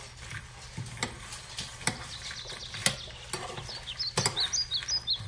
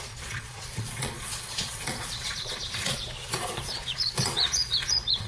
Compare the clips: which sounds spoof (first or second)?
second